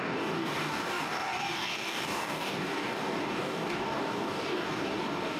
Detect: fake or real fake